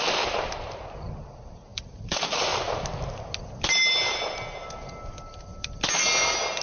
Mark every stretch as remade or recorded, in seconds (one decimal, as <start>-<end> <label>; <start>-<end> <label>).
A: 0.0-1.7 recorded; 1.7-2.3 remade; 2.3-6.6 recorded